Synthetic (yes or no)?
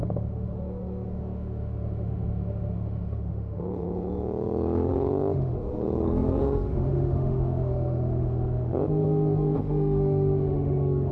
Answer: yes